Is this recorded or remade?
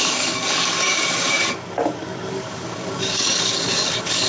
remade